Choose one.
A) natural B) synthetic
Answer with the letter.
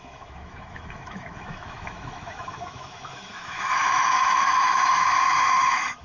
B